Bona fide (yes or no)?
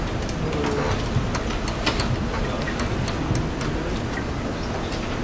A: yes